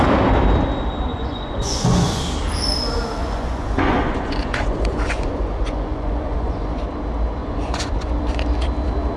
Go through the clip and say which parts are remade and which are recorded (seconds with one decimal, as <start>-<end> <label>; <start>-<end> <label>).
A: 0.0-1.1 recorded; 1.1-2.2 remade; 2.2-3.2 recorded; 3.2-6.8 remade; 6.8-7.4 recorded; 7.4-8.1 remade; 8.1-9.2 recorded